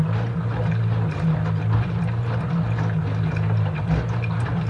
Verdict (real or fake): real